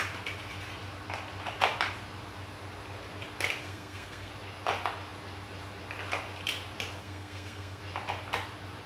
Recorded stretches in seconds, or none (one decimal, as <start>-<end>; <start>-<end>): 0.0-3.6; 4.3-7.0; 7.8-8.9